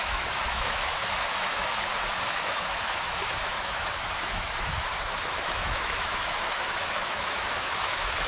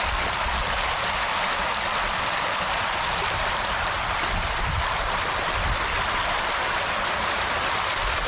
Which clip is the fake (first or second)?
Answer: first